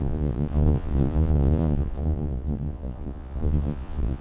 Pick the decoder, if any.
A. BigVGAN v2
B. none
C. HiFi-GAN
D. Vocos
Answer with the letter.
D